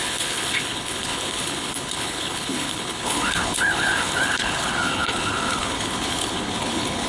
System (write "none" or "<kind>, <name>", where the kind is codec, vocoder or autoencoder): codec, HILCodec